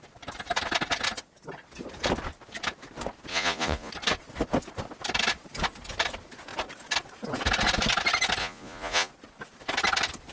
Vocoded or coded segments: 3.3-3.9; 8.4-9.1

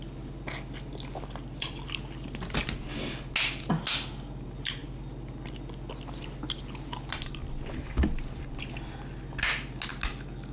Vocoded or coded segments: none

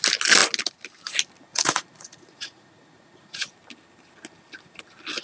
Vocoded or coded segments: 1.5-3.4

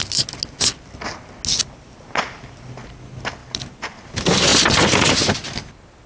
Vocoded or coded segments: 1.6-2.7; 3.4-4.0

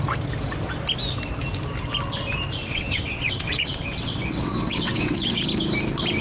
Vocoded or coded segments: 2.6-5.4

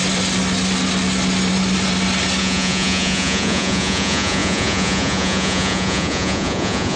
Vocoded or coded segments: 2.4-7.0

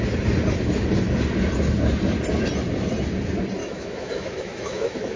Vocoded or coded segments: 3.6-5.2

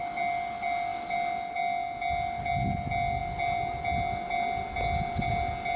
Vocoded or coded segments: none